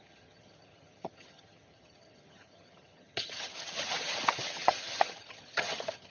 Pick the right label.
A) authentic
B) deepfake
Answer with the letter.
B